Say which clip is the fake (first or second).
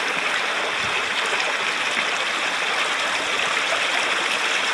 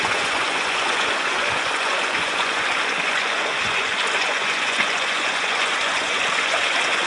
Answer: second